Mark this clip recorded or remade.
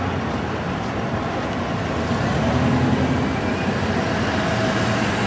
recorded